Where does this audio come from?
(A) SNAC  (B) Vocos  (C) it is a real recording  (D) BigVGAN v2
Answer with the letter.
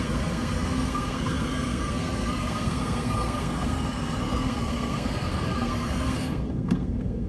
A